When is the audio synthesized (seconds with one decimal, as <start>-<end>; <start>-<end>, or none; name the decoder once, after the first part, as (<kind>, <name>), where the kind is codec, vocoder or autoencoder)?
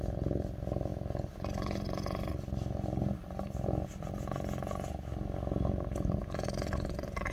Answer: none